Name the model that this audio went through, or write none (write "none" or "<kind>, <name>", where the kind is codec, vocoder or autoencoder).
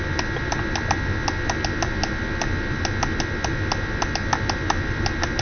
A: none